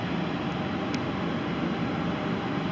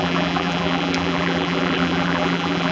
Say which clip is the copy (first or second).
second